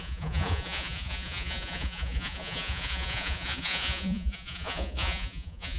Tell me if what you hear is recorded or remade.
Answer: remade